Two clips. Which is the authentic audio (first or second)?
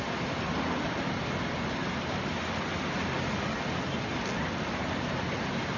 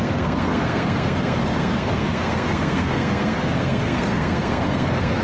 first